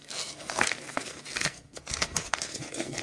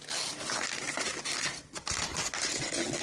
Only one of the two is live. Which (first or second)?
second